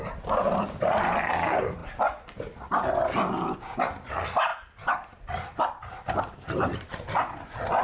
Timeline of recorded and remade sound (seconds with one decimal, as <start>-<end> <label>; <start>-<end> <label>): 0.0-7.8 recorded